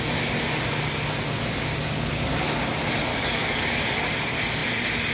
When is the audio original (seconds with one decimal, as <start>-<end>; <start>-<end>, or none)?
0.0-1.8; 2.3-3.1; 3.8-5.1